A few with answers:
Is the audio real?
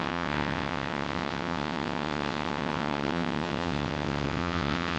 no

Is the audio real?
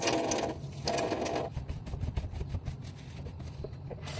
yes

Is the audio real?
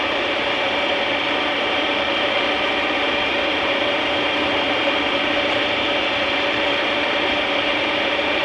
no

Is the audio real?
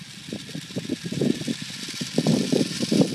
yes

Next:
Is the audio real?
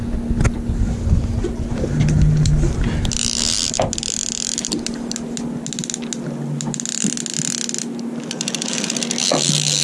yes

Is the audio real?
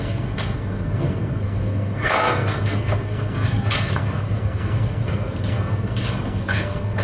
no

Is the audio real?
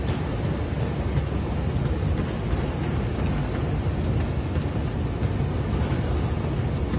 yes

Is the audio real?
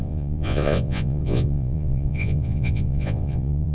no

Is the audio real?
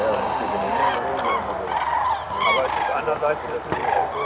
yes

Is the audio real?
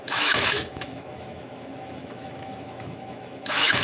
no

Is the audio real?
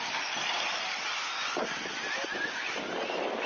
yes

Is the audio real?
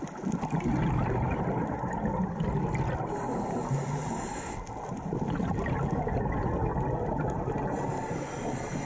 yes